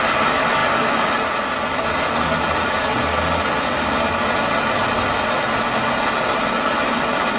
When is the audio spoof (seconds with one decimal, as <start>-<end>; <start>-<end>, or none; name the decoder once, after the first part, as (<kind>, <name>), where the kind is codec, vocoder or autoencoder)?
none